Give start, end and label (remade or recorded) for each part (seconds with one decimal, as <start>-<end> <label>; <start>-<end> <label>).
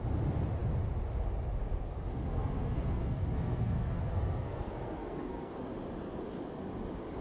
0.0-2.1 recorded; 2.1-5.6 remade; 5.6-7.2 recorded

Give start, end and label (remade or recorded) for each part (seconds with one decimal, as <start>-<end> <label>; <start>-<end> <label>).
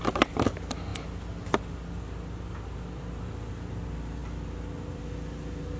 0.0-5.8 recorded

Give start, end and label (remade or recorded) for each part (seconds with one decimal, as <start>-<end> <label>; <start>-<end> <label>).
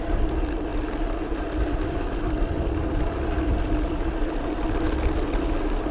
0.0-5.9 recorded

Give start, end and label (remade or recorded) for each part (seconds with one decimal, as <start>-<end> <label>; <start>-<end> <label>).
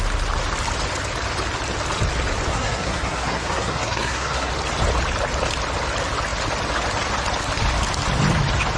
0.0-2.5 recorded; 2.5-4.5 remade; 4.5-8.8 recorded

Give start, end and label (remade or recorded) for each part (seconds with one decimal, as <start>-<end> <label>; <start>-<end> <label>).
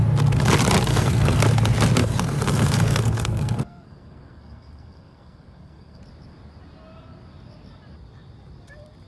0.0-0.9 recorded; 0.9-1.4 remade; 1.4-2.0 recorded; 2.0-6.0 remade; 6.0-9.1 recorded